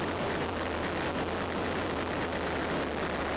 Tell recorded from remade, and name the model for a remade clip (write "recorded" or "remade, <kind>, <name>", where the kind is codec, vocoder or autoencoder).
recorded